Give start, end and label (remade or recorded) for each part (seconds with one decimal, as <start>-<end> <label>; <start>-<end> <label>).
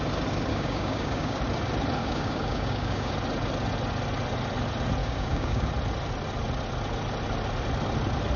0.0-0.5 recorded; 0.5-1.4 remade; 1.4-2.0 recorded; 2.0-3.1 remade; 3.1-5.0 recorded; 5.0-5.7 remade; 5.7-8.4 recorded